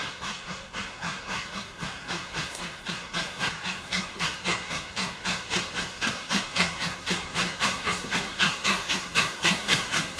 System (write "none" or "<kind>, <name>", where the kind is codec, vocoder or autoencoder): codec, SNAC